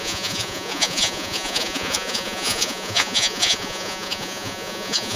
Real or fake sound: fake